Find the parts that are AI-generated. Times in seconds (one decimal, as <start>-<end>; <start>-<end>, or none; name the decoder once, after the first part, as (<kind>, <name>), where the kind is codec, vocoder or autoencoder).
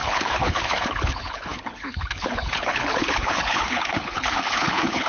0.0-5.1 (codec, HILCodec)